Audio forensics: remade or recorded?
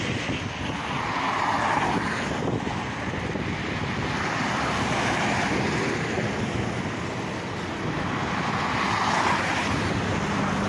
recorded